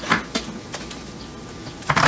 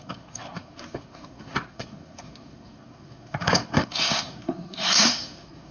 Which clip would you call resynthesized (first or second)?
second